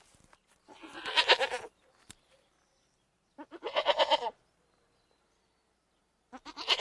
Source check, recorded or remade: remade